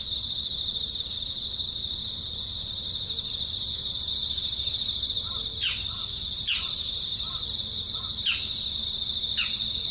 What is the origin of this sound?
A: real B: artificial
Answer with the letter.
A